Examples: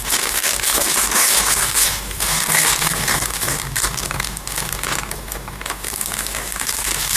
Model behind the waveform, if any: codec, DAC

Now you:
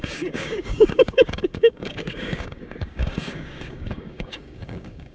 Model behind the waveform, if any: codec, DAC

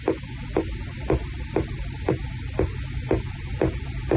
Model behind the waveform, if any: none